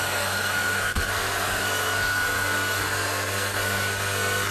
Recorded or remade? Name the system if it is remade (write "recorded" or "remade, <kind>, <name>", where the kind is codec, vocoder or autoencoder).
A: remade, codec, SNAC